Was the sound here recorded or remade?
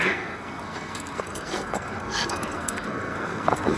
remade